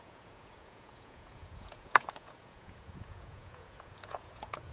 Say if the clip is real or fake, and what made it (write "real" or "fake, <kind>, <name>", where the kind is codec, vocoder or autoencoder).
fake, vocoder, Vocos